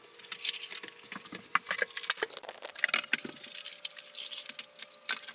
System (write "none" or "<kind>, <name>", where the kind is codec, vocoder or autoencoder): none